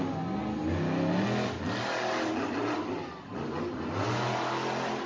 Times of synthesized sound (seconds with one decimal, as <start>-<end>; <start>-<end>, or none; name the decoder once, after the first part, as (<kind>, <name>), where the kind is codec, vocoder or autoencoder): none